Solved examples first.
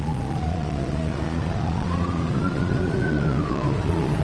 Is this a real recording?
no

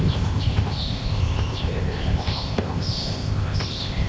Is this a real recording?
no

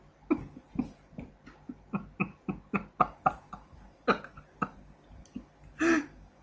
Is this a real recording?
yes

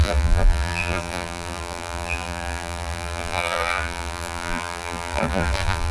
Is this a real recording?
no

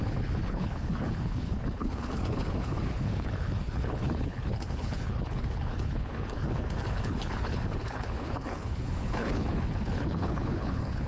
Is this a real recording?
no